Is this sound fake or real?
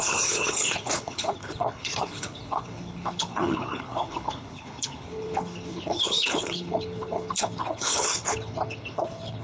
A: fake